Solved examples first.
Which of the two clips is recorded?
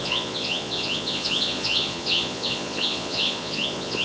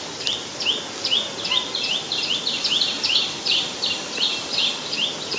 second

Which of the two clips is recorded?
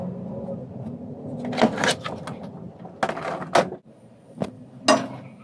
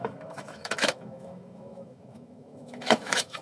first